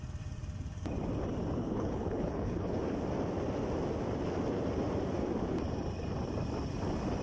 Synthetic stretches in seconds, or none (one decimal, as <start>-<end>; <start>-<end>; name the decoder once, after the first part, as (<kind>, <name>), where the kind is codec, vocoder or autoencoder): 1.6-2.8 (codec, HILCodec)